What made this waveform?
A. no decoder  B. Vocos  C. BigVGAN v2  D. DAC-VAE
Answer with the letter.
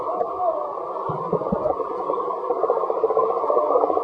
A